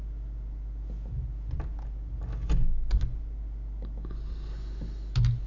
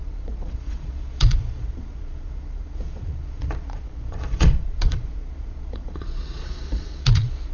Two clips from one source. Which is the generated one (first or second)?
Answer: second